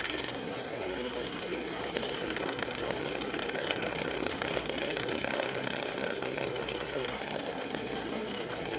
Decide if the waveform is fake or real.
fake